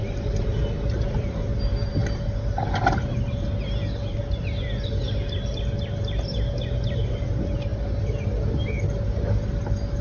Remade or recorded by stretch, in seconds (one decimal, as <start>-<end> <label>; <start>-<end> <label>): 0.0-10.0 recorded